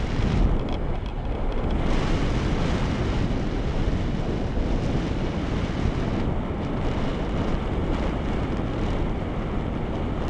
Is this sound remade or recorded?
recorded